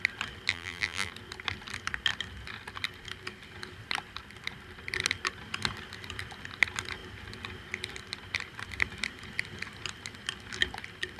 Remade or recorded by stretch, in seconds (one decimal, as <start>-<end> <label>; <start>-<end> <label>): 0.0-0.5 recorded; 0.5-1.1 remade; 1.1-11.2 recorded